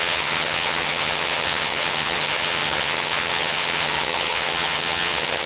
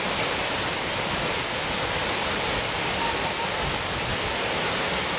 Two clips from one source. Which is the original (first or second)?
second